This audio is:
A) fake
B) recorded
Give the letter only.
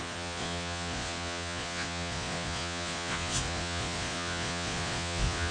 A